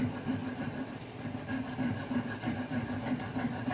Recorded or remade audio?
recorded